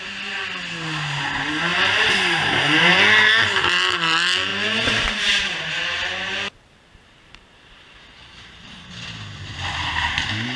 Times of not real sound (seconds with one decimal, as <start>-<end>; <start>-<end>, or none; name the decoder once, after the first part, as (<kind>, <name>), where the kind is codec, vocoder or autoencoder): 1.7-3.0 (vocoder, BigVGAN v2); 4.5-8.9